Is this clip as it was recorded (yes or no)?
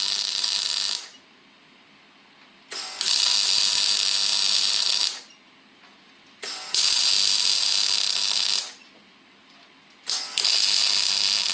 yes